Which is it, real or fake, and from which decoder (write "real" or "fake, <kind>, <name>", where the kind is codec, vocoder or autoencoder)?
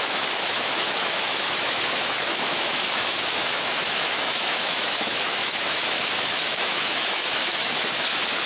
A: fake, autoencoder, DAC-VAE